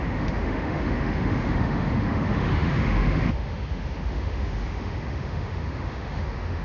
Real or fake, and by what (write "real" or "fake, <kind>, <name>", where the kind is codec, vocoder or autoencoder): fake, autoencoder, DAC-VAE